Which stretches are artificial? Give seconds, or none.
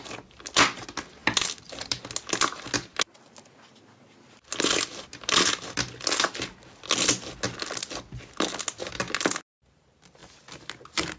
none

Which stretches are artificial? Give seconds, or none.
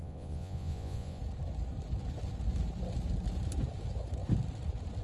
0.0-1.2 (vocoder, Vocos)